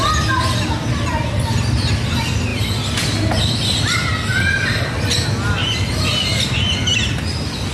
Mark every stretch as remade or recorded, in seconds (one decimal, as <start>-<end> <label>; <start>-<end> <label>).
0.0-7.7 recorded